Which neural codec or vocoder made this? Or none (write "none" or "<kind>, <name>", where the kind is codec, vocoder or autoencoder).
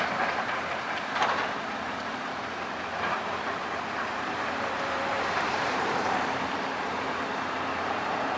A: vocoder, BigVGAN v2